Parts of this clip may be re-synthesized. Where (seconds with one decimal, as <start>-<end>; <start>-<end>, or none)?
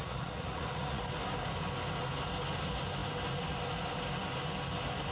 0.0-1.0